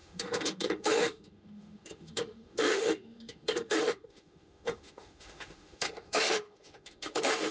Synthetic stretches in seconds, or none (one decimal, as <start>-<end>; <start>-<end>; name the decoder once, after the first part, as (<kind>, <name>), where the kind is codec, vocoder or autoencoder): 0.0-7.5 (autoencoder, DAC-VAE)

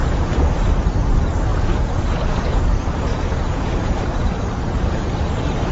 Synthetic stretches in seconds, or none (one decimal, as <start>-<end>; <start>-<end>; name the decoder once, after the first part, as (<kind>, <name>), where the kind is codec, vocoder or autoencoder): 0.0-0.7 (vocoder, Vocos); 1.5-2.6; 3.1-4.0

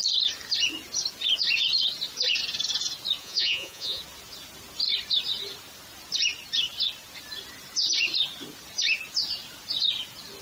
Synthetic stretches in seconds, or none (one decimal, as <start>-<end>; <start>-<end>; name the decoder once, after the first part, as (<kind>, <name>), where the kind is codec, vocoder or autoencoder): 3.2-4.0 (vocoder, Vocos)

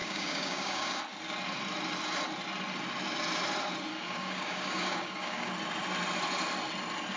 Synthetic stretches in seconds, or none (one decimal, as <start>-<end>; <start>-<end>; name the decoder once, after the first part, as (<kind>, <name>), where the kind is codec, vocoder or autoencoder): 0.0-1.0 (codec, DAC); 3.9-5.5

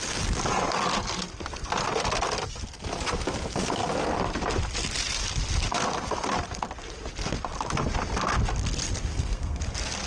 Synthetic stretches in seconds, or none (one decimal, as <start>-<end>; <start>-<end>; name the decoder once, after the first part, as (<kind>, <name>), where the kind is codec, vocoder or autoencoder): 9.1-9.6 (codec, SNAC)

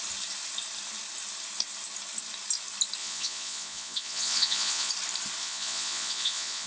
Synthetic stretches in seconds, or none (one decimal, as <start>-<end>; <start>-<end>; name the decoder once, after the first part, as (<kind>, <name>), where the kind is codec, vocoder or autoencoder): 3.0-4.9 (vocoder, Vocos); 5.4-6.7

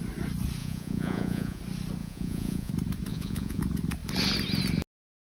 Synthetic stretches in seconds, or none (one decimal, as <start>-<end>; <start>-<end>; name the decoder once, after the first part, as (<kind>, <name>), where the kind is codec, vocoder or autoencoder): 0.6-1.6 (vocoder, Vocos); 2.0-2.7; 3.1-3.6

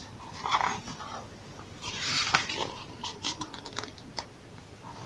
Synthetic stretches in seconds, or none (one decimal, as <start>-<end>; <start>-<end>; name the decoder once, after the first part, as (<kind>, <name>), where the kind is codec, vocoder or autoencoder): 0.4-3.4 (vocoder, BigVGAN v2)